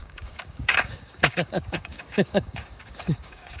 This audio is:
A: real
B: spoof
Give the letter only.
B